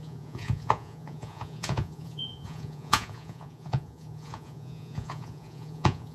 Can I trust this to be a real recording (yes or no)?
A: no